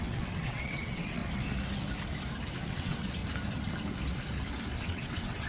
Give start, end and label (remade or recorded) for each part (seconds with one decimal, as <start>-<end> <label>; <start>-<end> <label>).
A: 0.0-1.2 remade; 1.2-2.7 recorded; 2.7-3.2 remade; 3.2-4.8 recorded; 4.8-5.5 remade

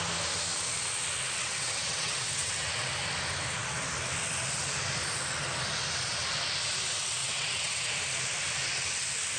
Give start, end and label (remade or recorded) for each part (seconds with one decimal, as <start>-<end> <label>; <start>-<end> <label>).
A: 0.0-1.4 recorded; 1.4-2.9 remade; 2.9-7.2 recorded; 7.2-7.9 remade; 7.9-9.4 recorded

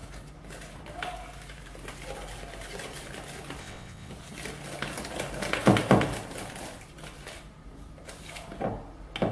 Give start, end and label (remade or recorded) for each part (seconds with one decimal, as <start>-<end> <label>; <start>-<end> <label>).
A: 0.0-3.6 recorded; 3.6-4.1 remade; 4.1-9.3 recorded

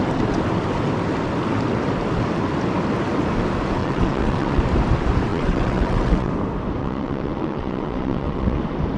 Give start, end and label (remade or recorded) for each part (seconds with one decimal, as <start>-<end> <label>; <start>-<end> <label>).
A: 0.0-3.8 recorded; 3.8-4.6 remade; 4.6-5.3 recorded; 5.3-6.3 remade; 6.3-6.8 recorded; 6.8-8.6 remade; 8.6-9.0 recorded

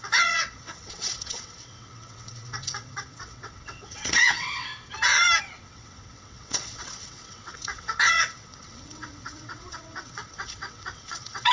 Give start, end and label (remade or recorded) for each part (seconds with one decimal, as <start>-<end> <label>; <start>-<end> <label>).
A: 0.0-4.7 remade; 4.7-5.4 recorded; 5.4-11.5 remade

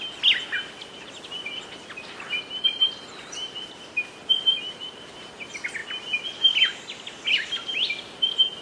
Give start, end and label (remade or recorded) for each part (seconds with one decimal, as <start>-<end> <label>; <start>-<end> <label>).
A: 0.0-8.6 recorded

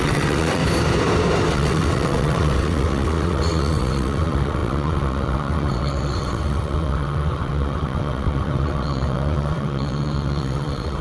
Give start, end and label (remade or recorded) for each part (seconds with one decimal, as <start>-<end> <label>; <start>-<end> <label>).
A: 0.0-0.6 remade; 0.6-1.5 recorded; 1.5-11.0 remade

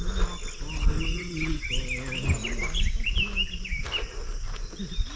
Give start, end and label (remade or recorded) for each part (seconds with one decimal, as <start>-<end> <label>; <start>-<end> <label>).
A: 0.0-1.1 recorded; 1.1-1.7 remade; 1.7-5.2 recorded